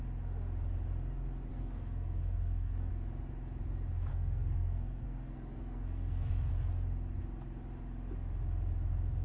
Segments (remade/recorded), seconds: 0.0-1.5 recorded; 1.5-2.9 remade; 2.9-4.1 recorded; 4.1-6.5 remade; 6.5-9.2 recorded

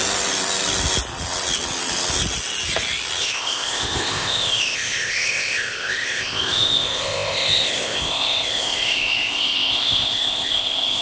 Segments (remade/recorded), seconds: 0.0-3.2 recorded; 3.2-11.0 remade

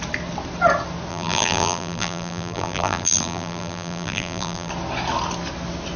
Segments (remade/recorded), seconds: 0.0-1.1 recorded; 1.1-4.7 remade; 4.7-6.0 recorded

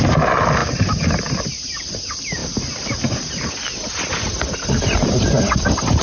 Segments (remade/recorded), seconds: 0.0-0.6 recorded; 0.6-1.2 remade; 1.2-6.0 recorded

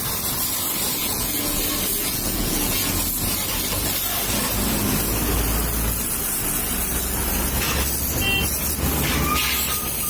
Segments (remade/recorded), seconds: 0.0-1.0 recorded; 1.0-1.6 remade; 1.6-2.0 recorded; 2.0-2.9 remade; 2.9-10.1 recorded

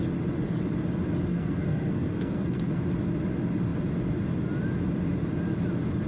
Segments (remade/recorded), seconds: 0.0-1.3 recorded; 1.3-2.8 remade; 2.8-6.1 recorded

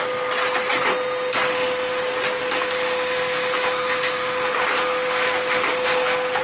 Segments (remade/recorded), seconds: 0.0-1.5 recorded; 1.5-2.0 remade; 2.0-2.4 recorded; 2.4-6.4 remade